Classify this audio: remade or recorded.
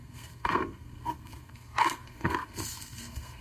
remade